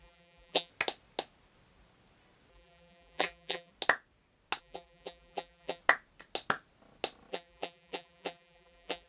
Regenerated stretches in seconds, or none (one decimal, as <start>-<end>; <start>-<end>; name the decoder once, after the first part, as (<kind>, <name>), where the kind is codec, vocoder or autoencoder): 0.0-0.7 (vocoder, BigVGAN v2); 2.5-3.7; 4.6-5.8; 7.3-9.1